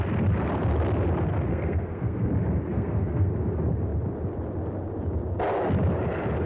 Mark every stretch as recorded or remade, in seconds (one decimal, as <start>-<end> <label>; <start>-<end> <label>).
0.0-1.5 recorded; 1.5-2.3 remade; 2.3-2.7 recorded; 2.7-3.3 remade; 3.3-6.5 recorded